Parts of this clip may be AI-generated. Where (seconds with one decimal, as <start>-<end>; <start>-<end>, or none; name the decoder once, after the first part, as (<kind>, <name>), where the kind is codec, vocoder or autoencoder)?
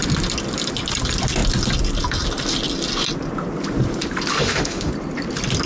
4.3-4.9 (autoencoder, DAC-VAE)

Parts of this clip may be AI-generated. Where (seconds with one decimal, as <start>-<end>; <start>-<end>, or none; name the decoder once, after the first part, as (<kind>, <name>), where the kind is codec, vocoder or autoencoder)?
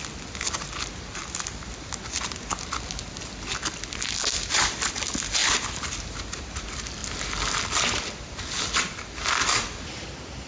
none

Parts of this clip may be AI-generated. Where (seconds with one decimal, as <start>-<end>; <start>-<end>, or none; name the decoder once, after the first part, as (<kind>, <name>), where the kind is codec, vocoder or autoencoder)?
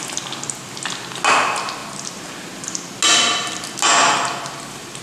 none